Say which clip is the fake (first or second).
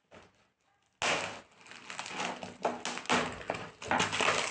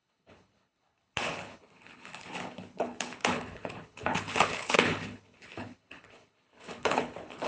second